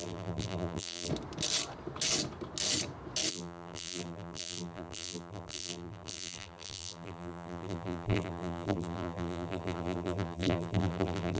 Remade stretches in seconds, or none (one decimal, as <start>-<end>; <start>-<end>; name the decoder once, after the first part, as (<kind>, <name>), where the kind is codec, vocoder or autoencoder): 0.0-1.1 (vocoder, BigVGAN v2); 3.3-11.4

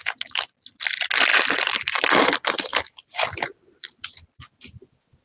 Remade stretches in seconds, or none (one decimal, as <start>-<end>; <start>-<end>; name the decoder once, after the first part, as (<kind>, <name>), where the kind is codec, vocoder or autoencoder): 1.3-4.4 (vocoder, BigVGAN v2)

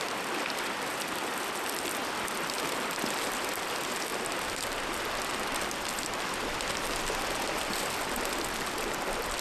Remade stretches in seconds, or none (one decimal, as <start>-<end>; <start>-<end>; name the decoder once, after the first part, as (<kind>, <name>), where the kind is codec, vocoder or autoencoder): none

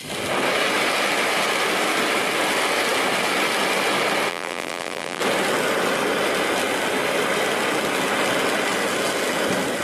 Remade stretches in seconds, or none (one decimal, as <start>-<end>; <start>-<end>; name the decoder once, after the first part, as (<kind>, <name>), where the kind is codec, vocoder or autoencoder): 4.3-5.2 (vocoder, BigVGAN v2)